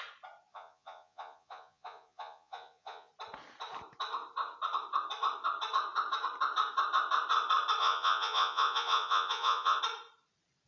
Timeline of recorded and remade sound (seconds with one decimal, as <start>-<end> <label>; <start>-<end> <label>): 0.0-0.5 recorded; 0.5-3.1 remade; 3.1-7.8 recorded; 7.8-9.8 remade; 9.8-10.7 recorded